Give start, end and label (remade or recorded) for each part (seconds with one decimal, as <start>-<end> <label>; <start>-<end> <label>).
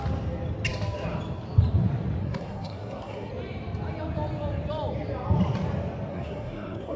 0.0-2.2 recorded; 2.2-3.3 remade; 3.3-6.1 recorded; 6.1-7.0 remade